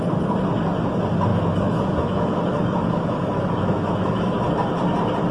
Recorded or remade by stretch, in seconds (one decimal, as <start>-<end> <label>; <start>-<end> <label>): 0.0-1.3 recorded; 1.3-4.5 remade; 4.5-5.3 recorded